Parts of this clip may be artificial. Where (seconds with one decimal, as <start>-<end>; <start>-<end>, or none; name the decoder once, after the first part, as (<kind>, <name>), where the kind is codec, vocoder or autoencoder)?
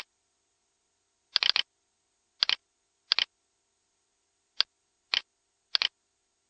none